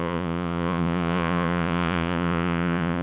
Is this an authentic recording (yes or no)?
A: no